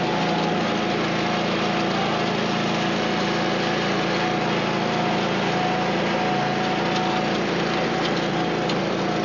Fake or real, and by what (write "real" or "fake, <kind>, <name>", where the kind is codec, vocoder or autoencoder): real